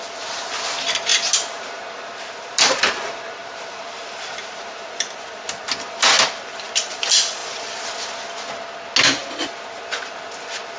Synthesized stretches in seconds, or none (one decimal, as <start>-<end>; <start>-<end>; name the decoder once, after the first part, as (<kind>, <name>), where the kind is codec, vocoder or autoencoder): 1.1-5.1 (vocoder, BigVGAN v2)